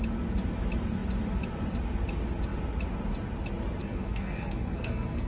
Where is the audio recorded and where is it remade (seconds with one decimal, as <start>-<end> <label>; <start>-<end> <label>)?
0.0-3.8 recorded; 3.8-5.3 remade